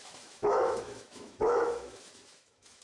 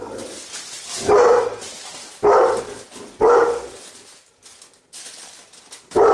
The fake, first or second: first